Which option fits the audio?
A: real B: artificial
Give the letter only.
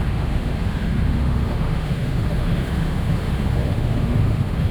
B